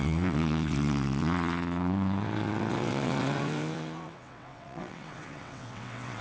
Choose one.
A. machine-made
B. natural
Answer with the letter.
A